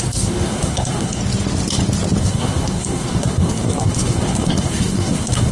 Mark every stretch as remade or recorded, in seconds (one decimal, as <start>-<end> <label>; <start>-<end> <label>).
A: 0.0-1.2 remade; 1.2-2.2 recorded; 2.2-5.5 remade